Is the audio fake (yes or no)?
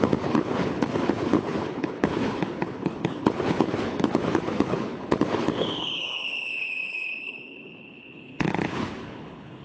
yes